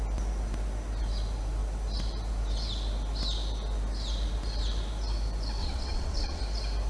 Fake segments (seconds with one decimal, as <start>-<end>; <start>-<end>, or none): 5.6-6.4